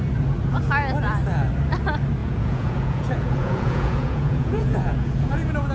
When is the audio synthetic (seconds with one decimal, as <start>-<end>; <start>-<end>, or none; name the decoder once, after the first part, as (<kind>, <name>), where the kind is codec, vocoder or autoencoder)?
2.2-5.7 (vocoder, Vocos)